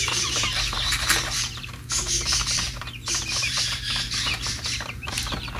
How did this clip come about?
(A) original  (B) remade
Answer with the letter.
B